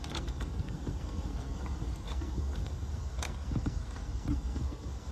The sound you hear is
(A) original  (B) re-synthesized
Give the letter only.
B